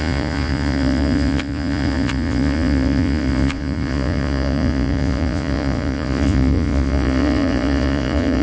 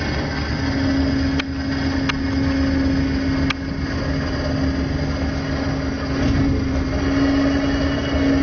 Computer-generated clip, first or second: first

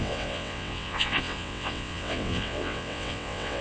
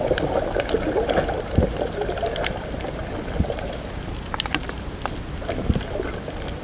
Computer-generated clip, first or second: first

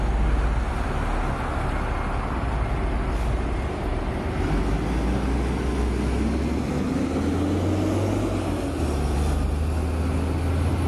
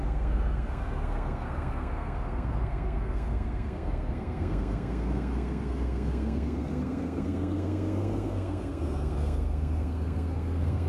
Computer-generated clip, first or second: second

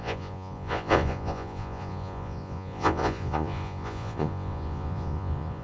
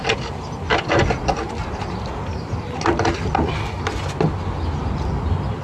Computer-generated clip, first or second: first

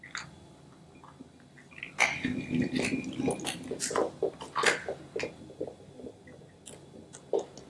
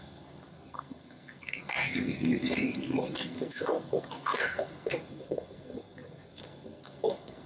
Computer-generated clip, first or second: second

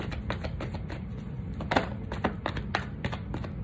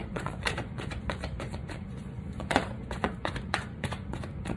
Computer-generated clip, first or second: second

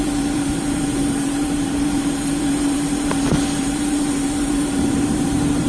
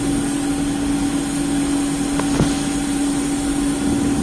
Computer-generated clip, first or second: first